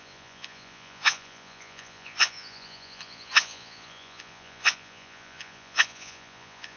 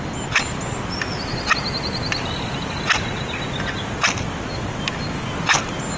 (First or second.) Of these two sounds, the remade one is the first